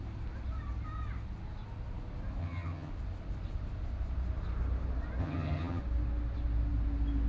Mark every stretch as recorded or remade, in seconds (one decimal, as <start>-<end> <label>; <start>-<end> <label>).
0.0-2.4 recorded; 2.4-2.9 remade; 2.9-5.2 recorded; 5.2-5.8 remade; 5.8-7.3 recorded